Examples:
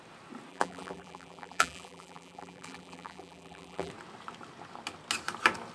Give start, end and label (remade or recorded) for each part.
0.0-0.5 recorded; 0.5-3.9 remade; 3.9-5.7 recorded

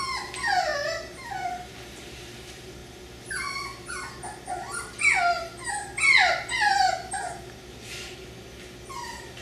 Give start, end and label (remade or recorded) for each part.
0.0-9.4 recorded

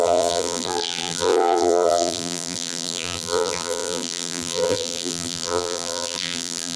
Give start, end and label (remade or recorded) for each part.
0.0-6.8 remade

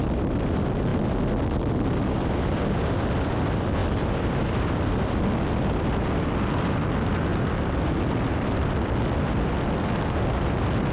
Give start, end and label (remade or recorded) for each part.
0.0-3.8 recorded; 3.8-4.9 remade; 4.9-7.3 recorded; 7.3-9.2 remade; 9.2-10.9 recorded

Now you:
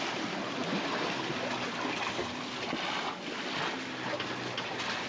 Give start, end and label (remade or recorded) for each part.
0.0-5.1 recorded